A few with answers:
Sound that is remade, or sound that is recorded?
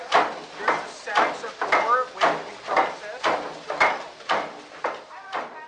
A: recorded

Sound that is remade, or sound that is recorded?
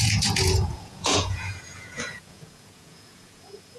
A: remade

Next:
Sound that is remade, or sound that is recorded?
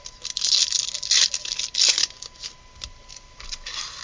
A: recorded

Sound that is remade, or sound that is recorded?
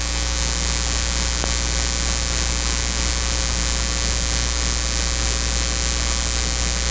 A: recorded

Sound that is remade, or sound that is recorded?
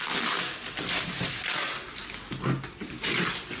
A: recorded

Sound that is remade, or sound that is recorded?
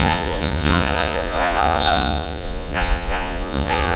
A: remade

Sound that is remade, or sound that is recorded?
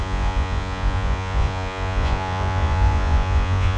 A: remade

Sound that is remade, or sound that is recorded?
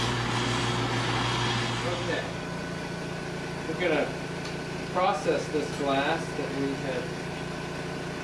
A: recorded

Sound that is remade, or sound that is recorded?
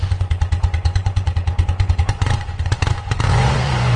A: remade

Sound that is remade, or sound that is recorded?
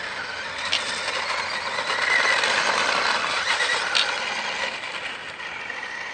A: recorded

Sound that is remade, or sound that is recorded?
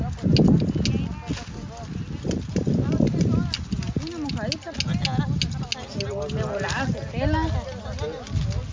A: recorded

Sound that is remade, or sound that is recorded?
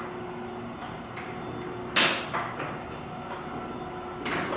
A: recorded